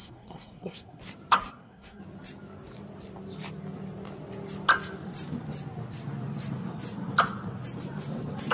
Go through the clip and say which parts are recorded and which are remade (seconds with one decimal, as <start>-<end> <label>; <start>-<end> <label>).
0.0-1.0 remade; 1.0-1.5 recorded; 1.5-2.0 remade; 2.0-8.5 recorded